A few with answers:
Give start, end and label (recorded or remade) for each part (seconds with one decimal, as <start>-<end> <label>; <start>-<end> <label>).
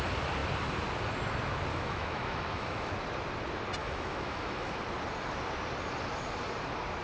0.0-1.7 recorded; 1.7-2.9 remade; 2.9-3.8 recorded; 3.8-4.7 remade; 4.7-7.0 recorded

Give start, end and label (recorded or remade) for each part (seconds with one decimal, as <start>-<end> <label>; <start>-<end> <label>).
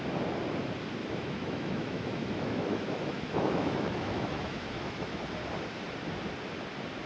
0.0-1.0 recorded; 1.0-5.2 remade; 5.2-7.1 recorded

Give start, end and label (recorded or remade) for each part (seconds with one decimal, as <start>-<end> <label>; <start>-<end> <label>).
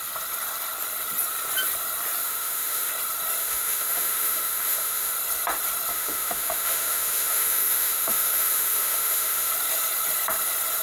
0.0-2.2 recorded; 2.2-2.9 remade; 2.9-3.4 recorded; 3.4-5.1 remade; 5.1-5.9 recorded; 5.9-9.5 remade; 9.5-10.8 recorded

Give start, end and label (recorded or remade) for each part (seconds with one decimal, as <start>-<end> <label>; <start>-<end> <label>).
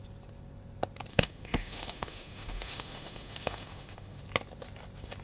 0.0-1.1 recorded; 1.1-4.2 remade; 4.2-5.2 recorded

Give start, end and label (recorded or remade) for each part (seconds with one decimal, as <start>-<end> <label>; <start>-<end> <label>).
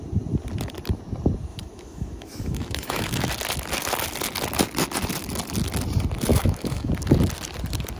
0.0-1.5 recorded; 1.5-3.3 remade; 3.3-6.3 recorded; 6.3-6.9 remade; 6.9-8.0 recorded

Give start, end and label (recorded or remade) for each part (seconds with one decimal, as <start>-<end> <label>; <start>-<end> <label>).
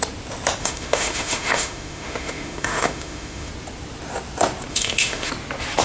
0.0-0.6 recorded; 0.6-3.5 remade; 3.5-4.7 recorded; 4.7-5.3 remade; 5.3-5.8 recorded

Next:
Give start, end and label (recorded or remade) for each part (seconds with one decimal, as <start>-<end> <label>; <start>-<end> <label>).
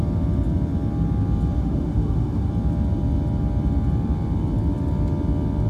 0.0-1.6 recorded; 1.6-2.5 remade; 2.5-5.7 recorded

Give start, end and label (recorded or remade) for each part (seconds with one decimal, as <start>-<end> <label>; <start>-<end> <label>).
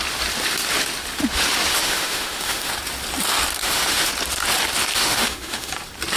0.0-1.7 recorded; 1.7-2.7 remade; 2.7-3.6 recorded; 3.6-4.1 remade; 4.1-4.9 recorded; 4.9-5.7 remade; 5.7-6.2 recorded